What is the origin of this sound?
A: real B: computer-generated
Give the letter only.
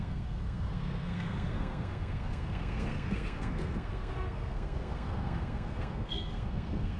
B